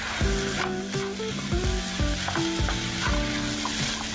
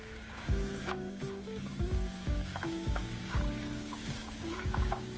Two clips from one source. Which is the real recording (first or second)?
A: first